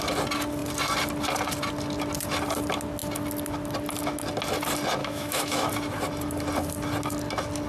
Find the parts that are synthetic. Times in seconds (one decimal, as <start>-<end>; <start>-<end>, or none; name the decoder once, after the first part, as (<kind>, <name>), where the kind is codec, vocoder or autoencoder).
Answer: 5.0-5.7 (autoencoder, DAC-VAE)